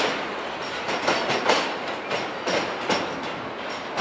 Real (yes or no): yes